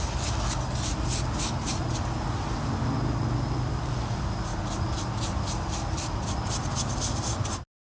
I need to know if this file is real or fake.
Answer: real